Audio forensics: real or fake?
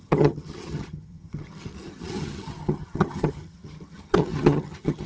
fake